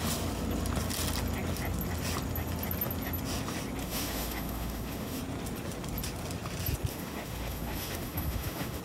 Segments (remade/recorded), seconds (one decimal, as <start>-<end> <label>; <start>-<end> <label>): 0.0-3.8 recorded; 3.8-5.2 remade; 5.2-6.9 recorded; 6.9-8.8 remade